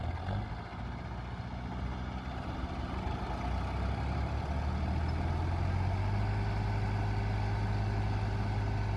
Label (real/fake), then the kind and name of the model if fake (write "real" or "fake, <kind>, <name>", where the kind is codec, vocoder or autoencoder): real